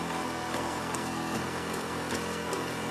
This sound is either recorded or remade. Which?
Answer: remade